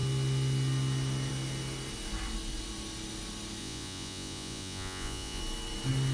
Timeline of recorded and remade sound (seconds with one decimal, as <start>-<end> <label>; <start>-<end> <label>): 0.0-3.6 recorded; 3.6-5.4 remade; 5.4-6.1 recorded